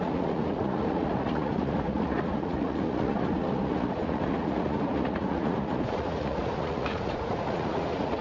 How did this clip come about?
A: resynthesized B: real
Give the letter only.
A